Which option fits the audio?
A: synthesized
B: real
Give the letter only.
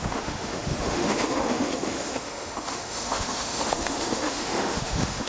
A